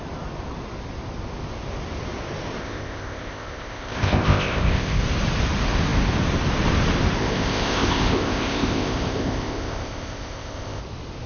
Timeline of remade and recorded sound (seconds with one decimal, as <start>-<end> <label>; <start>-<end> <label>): 0.0-2.6 recorded; 2.6-5.0 remade; 5.0-7.2 recorded; 7.2-10.8 remade; 10.8-11.3 recorded